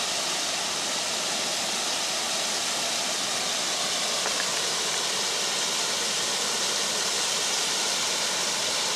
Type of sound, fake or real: real